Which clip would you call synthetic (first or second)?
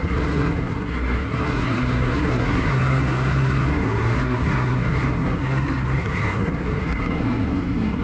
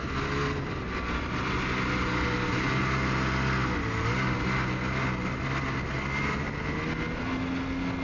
first